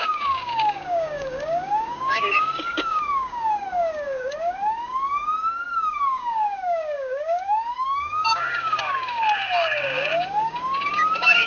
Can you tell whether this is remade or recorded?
remade